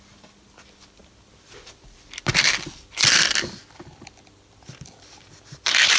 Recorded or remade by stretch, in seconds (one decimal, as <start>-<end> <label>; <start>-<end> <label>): 0.0-6.0 recorded